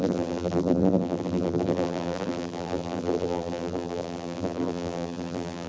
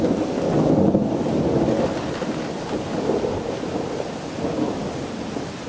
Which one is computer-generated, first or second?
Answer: first